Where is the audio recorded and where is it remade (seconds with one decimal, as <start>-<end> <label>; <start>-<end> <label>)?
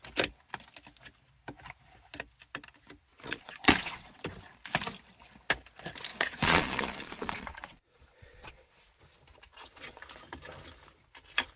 0.0-3.1 recorded; 3.1-4.2 remade; 4.2-6.1 recorded; 6.1-9.0 remade; 9.0-9.5 recorded; 9.5-10.0 remade; 10.0-11.6 recorded